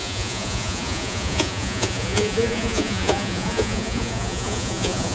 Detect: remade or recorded remade